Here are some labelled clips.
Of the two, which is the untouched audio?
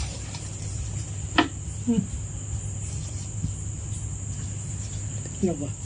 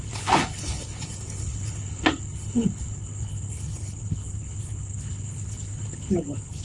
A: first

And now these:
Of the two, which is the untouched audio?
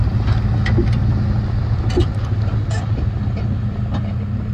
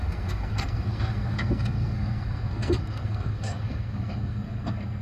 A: first